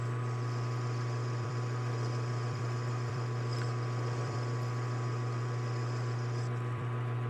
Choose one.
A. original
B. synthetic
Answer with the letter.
B